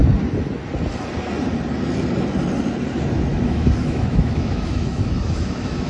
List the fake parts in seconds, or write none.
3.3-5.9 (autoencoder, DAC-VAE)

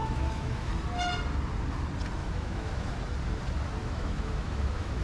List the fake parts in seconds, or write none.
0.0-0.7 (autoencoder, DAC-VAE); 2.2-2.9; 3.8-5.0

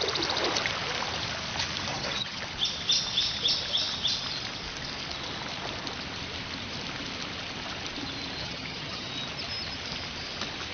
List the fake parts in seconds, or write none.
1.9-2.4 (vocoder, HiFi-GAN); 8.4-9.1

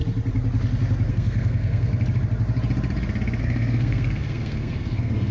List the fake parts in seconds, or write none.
1.1-1.9 (codec, SNAC); 3.4-5.3

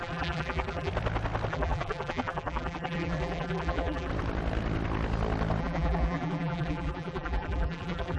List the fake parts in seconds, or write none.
0.0-0.9 (vocoder, BigVGAN v2); 1.5-4.1; 5.6-8.2

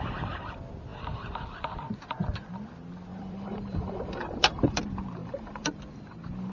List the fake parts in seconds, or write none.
3.1-4.8 (vocoder, BigVGAN v2); 5.2-5.7

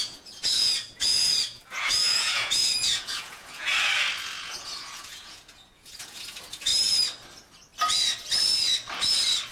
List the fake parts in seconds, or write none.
0.0-3.7 (vocoder, Vocos); 4.4-6.7

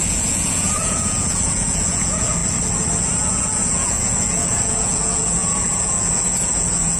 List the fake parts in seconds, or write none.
0.0-2.4 (vocoder, Vocos); 3.2-7.0